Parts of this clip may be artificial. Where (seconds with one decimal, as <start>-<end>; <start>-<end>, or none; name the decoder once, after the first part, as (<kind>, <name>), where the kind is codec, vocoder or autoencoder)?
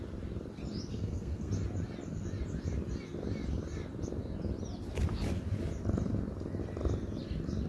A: 0.9-1.5 (codec, SNAC)